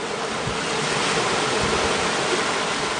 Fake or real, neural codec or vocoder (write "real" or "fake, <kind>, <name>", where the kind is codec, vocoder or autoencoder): real